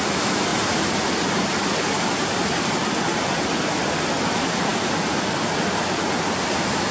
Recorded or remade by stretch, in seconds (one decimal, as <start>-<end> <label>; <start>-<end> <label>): 0.0-6.9 recorded